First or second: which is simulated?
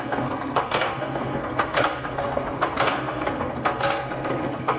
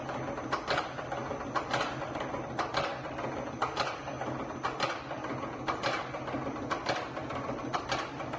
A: first